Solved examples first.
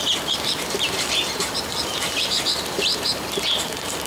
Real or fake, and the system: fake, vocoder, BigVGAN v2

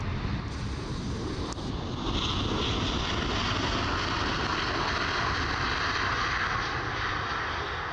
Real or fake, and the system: real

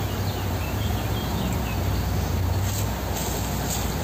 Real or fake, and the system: real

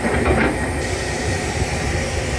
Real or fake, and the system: fake, vocoder, BigVGAN v2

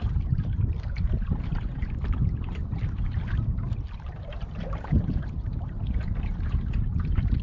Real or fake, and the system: fake, vocoder, BigVGAN v2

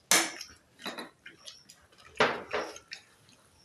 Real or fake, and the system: real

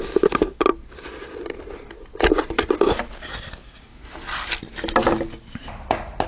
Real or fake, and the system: real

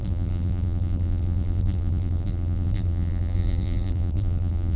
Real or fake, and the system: fake, vocoder, BigVGAN v2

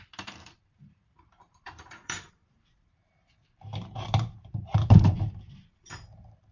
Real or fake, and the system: fake, vocoder, BigVGAN v2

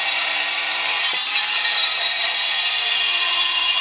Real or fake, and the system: fake, vocoder, BigVGAN v2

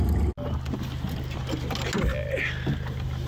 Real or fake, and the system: real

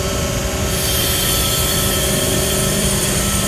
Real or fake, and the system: fake, vocoder, BigVGAN v2